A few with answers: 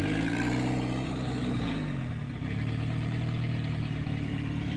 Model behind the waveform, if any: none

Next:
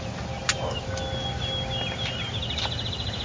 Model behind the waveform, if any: none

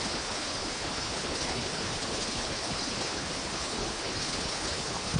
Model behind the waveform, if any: codec, HILCodec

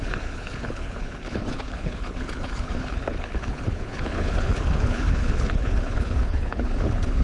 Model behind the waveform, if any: codec, HILCodec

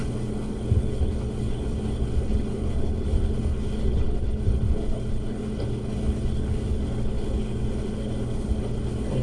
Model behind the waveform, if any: codec, HILCodec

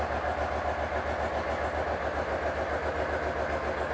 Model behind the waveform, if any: none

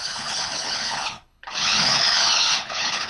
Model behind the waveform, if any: codec, HILCodec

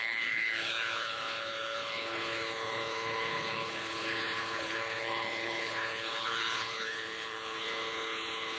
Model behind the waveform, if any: codec, HILCodec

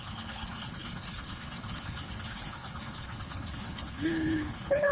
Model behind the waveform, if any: codec, HILCodec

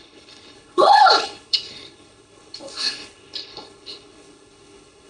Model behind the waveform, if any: codec, HILCodec